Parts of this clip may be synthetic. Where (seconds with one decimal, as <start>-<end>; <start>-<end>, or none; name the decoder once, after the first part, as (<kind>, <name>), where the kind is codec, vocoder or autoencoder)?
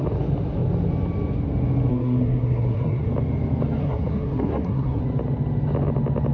1.9-3.1 (codec, SNAC); 3.8-5.0